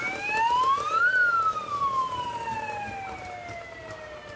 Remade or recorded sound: recorded